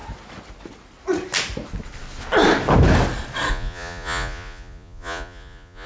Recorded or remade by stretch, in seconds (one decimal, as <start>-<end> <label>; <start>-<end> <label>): 0.0-3.5 recorded; 3.5-5.9 remade